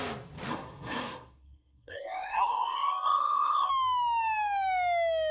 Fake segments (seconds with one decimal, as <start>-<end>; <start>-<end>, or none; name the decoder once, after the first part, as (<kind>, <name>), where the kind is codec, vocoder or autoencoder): 0.5-3.7 (codec, SNAC)